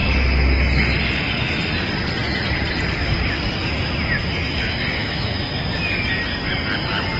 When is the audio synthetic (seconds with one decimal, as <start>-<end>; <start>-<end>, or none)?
5.0-5.6